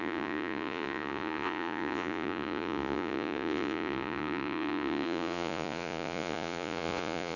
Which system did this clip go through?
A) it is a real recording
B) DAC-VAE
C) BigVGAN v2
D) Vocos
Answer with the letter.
D